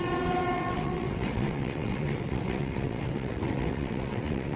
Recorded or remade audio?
remade